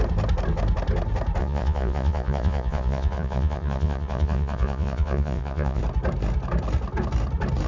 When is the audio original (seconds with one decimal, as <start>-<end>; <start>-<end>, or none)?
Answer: 0.0-1.4; 5.8-7.7